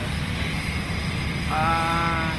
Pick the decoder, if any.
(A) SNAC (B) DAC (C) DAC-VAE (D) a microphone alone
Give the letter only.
D